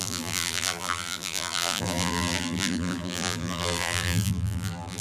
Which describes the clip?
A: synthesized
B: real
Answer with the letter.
A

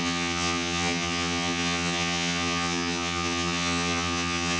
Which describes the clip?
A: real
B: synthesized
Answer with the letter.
B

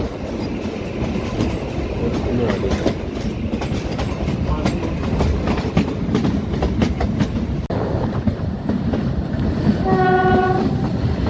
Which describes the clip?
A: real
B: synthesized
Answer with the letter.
A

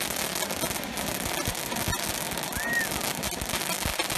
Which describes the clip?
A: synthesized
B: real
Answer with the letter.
B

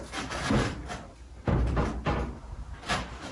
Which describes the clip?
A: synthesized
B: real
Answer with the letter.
B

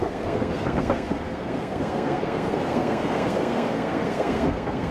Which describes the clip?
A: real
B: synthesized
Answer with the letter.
B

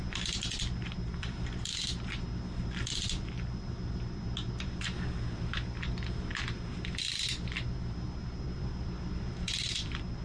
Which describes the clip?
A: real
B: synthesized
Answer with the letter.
B